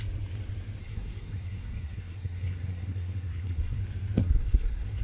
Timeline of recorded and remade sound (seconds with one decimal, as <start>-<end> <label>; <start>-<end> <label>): 0.0-0.8 recorded; 0.8-3.8 remade; 3.8-4.2 recorded; 4.2-5.0 remade